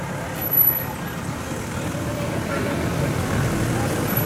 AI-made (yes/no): no